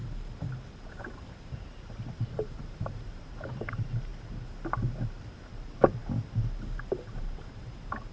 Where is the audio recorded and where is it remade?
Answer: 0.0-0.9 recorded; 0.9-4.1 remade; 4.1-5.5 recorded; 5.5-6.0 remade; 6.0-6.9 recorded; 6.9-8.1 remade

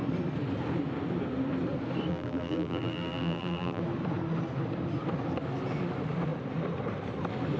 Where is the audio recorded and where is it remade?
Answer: 0.0-2.1 recorded; 2.1-3.8 remade; 3.8-7.6 recorded

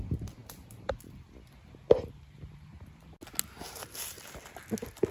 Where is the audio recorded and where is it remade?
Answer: 0.0-5.1 recorded